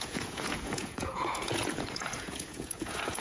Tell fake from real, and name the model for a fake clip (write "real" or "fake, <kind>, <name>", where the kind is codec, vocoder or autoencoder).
fake, vocoder, Vocos